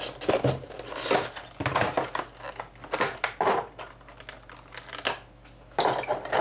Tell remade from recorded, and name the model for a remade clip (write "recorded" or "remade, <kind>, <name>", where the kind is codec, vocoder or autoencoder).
recorded